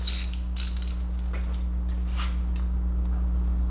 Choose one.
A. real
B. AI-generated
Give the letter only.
A